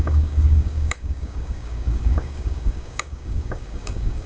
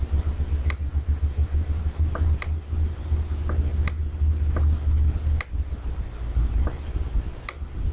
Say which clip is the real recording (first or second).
second